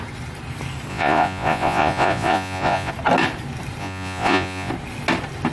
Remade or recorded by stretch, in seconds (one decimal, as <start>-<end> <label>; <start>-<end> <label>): 0.0-0.9 recorded; 0.9-2.9 remade; 2.9-3.8 recorded; 3.8-4.7 remade; 4.7-5.5 recorded